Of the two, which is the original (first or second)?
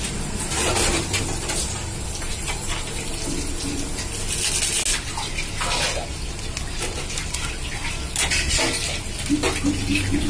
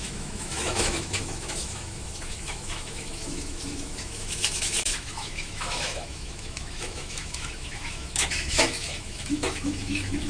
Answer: first